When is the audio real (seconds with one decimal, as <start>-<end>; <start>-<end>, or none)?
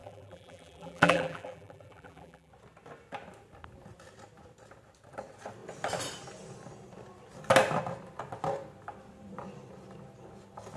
2.5-10.8